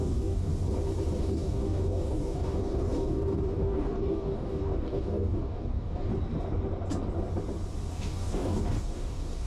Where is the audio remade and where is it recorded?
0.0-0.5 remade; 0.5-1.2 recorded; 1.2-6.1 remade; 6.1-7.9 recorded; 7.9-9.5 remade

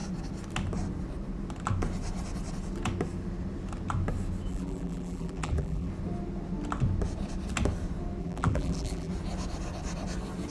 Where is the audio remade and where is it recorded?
0.0-4.5 recorded; 4.5-5.9 remade; 5.9-8.2 recorded; 8.2-9.1 remade; 9.1-10.5 recorded

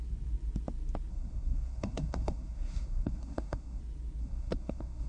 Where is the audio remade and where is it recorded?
0.0-1.1 recorded; 1.1-3.8 remade; 3.8-4.2 recorded; 4.2-5.1 remade